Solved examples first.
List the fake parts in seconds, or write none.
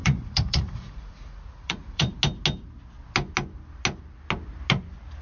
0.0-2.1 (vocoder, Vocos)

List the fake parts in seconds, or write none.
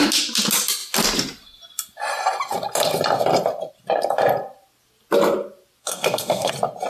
5.8-6.5 (codec, SNAC)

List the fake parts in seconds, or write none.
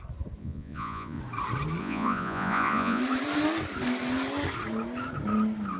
0.4-1.2 (vocoder, Vocos); 1.8-3.0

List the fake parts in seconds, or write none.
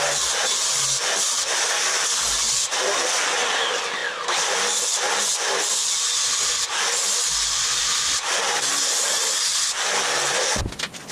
none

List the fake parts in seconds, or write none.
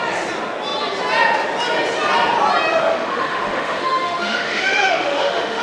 2.9-5.6 (autoencoder, DAC-VAE)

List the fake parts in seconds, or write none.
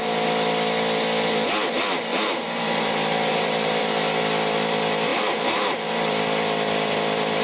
2.1-4.2 (vocoder, BigVGAN v2); 5.1-5.9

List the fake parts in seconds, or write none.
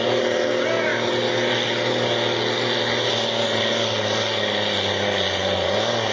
none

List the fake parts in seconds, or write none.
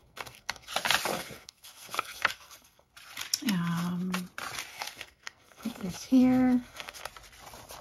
0.0-0.7 (codec, SNAC); 1.1-2.9; 4.7-7.1